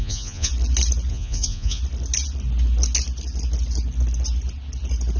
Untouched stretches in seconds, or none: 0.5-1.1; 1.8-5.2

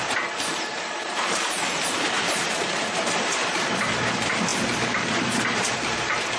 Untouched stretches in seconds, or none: 3.4-4.1

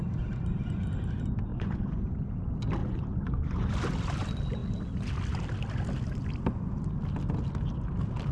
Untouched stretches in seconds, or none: 0.0-1.5; 2.2-2.8; 3.7-8.3